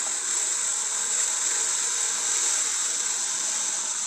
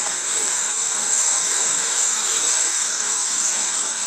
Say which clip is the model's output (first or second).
second